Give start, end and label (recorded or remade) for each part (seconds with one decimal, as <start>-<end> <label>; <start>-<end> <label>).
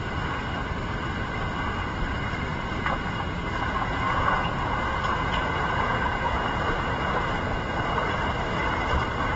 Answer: 0.0-2.5 recorded; 2.5-7.3 remade; 7.3-9.4 recorded